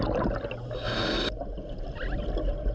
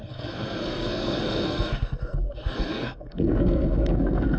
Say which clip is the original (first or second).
first